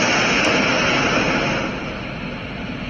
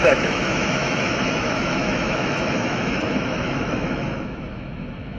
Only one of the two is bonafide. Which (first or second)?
first